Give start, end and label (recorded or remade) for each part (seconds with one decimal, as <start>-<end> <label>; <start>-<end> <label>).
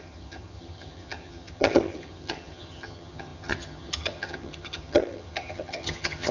0.0-6.3 remade